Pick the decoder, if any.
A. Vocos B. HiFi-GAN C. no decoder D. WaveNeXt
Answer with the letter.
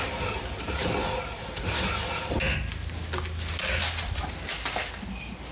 C